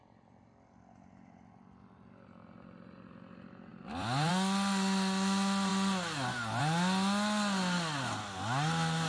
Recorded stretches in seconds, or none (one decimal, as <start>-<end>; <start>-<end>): 0.0-3.7; 4.3-9.1